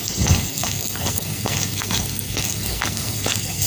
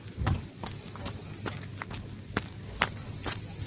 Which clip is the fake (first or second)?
first